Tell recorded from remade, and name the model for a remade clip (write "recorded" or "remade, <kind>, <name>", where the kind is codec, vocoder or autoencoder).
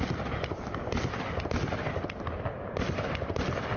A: recorded